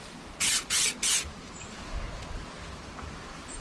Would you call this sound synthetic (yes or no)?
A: no